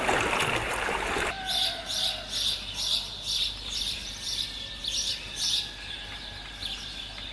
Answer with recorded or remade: recorded